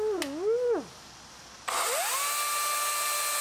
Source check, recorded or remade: recorded